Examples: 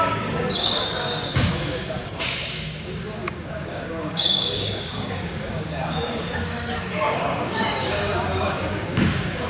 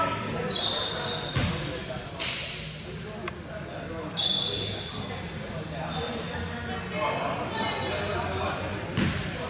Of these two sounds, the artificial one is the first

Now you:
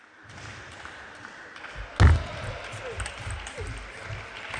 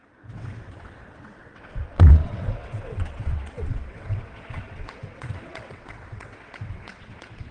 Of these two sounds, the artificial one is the second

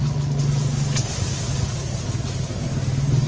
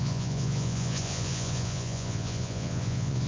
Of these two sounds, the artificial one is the second